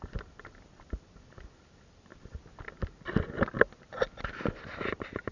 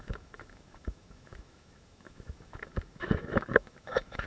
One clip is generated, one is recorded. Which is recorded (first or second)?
first